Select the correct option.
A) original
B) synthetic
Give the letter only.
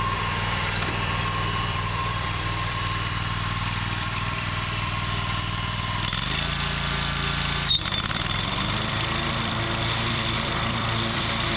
B